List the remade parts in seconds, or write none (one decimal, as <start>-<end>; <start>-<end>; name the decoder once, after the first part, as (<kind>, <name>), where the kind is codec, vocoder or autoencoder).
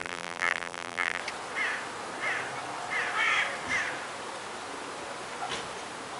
0.0-1.2 (vocoder, BigVGAN v2)